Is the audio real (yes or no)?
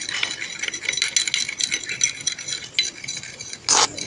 yes